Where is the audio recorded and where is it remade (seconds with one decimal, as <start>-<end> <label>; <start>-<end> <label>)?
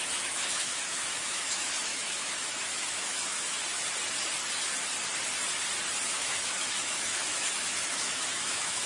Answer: 0.0-3.6 remade; 3.6-6.0 recorded; 6.0-8.9 remade